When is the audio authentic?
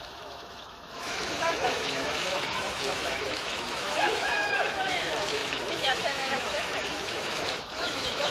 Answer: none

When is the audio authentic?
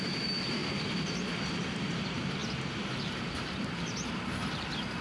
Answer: 0.6-1.1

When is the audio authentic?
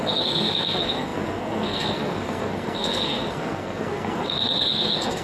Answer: none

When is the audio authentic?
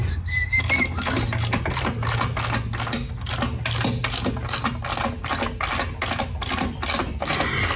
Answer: 0.0-7.8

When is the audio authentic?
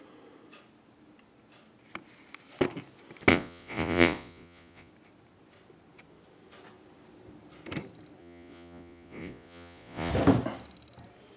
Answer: 0.0-3.3; 4.9-8.2; 10.1-11.4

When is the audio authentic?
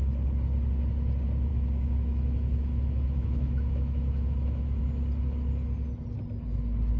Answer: 0.0-1.5; 4.8-7.0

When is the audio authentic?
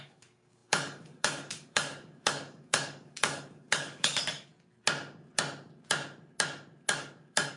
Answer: 4.5-6.9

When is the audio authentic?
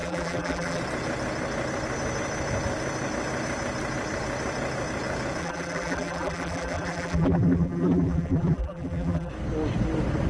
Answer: 0.8-5.4; 9.3-10.3